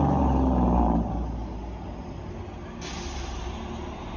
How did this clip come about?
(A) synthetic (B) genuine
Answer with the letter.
B